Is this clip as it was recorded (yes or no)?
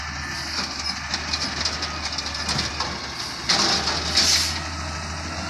yes